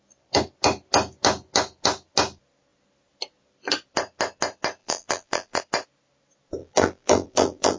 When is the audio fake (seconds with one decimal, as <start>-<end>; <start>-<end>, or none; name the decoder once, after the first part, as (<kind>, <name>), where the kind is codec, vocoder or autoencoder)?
4.8-5.6 (vocoder, BigVGAN v2); 6.6-7.8